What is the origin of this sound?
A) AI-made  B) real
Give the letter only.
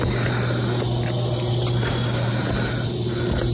B